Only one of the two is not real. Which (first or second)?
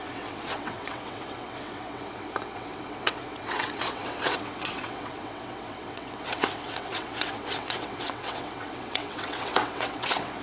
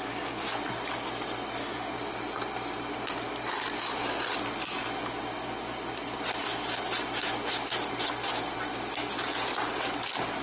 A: first